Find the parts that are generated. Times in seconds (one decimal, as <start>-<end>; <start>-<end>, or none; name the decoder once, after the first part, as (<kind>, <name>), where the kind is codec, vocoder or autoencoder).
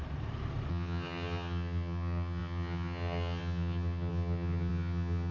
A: 0.7-5.3 (vocoder, HiFi-GAN)